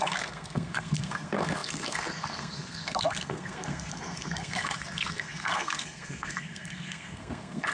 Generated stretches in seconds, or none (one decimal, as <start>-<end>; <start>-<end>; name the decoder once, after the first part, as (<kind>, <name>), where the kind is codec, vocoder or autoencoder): 0.0-7.7 (codec, SNAC)